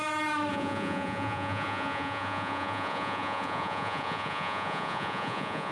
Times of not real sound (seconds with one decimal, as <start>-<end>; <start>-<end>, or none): 0.5-5.7